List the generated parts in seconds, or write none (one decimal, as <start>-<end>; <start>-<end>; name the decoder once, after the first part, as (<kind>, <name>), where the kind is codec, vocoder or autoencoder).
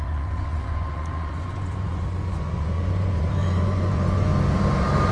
0.0-4.3 (vocoder, Vocos)